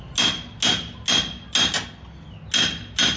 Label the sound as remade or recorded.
recorded